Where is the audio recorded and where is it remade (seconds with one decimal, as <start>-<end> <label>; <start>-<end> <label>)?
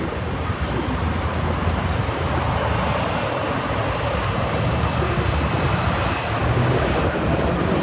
0.0-6.4 recorded; 6.4-7.0 remade; 7.0-7.8 recorded